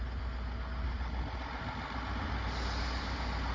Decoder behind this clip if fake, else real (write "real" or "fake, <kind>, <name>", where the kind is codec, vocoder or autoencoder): real